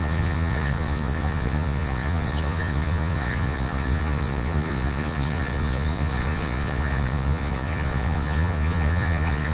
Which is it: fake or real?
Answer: fake